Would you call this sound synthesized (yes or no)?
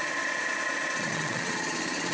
yes